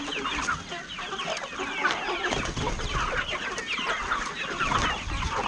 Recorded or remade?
recorded